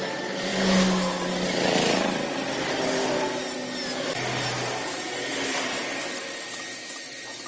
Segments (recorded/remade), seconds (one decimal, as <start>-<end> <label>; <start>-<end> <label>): 0.0-7.5 recorded